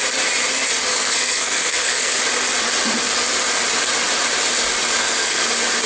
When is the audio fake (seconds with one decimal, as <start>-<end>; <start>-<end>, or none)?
0.9-2.2; 5.0-5.5